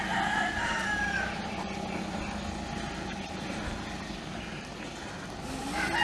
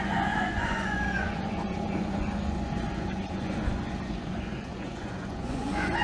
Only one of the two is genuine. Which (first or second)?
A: first